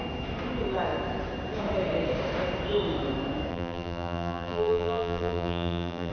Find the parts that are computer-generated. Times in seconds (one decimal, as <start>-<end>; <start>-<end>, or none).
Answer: 3.5-6.1